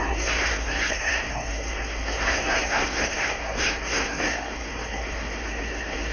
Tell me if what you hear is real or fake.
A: fake